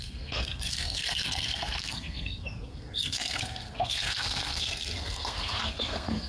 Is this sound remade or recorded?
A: remade